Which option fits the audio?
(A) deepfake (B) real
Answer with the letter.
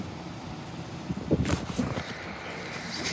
A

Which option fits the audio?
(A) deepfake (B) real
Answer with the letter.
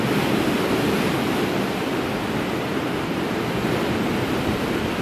B